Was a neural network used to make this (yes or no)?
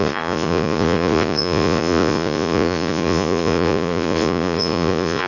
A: yes